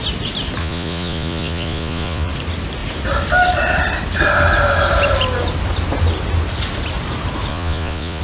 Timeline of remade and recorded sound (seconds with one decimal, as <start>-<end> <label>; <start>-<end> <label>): 0.0-0.6 recorded; 0.6-2.3 remade; 2.3-7.5 recorded; 7.5-8.2 remade